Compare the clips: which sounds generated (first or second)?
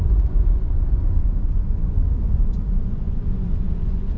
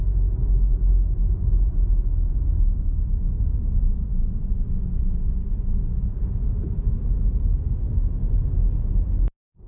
first